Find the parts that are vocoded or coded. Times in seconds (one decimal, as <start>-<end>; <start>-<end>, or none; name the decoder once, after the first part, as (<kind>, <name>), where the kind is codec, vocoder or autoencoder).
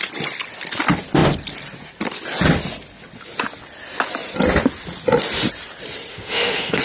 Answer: 6.1-6.8 (autoencoder, DAC-VAE)